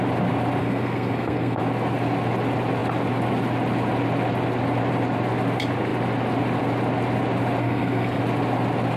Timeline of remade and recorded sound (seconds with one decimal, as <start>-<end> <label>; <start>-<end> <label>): 0.0-0.6 recorded; 0.6-1.6 remade; 1.6-7.6 recorded; 7.6-8.2 remade; 8.2-9.0 recorded